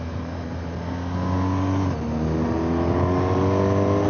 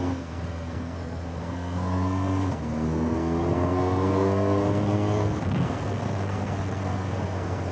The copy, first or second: second